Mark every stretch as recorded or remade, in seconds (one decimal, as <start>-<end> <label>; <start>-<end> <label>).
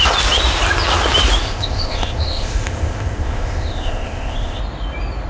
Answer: 0.0-1.4 recorded; 1.4-4.6 remade; 4.6-5.3 recorded